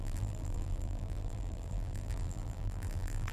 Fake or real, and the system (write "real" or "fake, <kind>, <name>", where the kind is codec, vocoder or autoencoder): fake, vocoder, BigVGAN v2